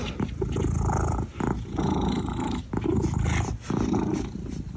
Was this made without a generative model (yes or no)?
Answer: yes